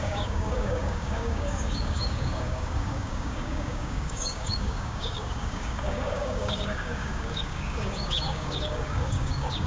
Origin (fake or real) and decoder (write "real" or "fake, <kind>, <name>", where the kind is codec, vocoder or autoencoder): fake, codec, DAC